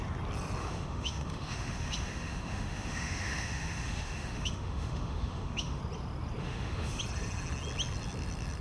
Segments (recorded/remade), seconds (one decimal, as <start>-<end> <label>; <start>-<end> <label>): 0.0-0.6 recorded; 0.6-5.8 remade; 5.8-6.4 recorded; 6.4-7.0 remade; 7.0-8.6 recorded